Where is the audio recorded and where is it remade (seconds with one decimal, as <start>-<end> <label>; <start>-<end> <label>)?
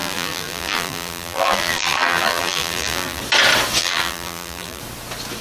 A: 0.0-3.2 remade; 3.2-3.8 recorded; 3.8-4.8 remade; 4.8-5.4 recorded